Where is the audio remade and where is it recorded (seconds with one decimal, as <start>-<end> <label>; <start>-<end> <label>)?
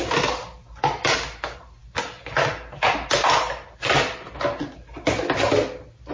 0.0-6.1 recorded